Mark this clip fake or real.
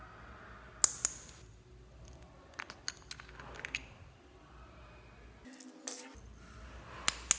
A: real